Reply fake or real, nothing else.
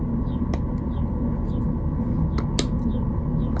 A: real